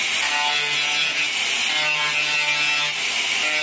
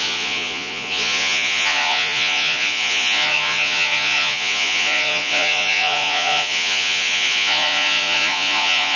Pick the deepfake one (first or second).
second